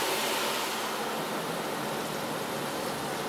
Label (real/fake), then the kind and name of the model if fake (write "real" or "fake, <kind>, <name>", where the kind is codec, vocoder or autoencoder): real